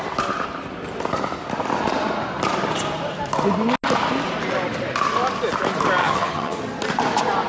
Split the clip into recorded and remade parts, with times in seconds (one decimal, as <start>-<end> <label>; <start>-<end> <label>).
0.0-6.0 recorded; 6.0-6.6 remade; 6.6-7.5 recorded